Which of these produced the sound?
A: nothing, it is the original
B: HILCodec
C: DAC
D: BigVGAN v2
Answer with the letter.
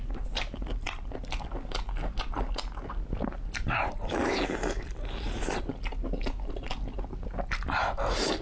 A